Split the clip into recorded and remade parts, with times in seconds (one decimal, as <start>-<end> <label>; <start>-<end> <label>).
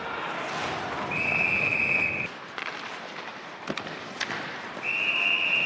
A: 0.0-5.7 recorded